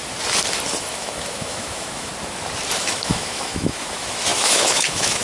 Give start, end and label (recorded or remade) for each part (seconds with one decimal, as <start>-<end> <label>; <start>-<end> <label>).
0.0-0.8 recorded; 0.8-2.1 remade; 2.1-2.8 recorded; 2.8-5.2 remade